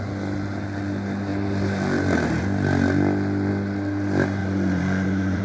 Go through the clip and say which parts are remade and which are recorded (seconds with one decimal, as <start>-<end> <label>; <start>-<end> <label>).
0.0-4.4 recorded; 4.4-5.4 remade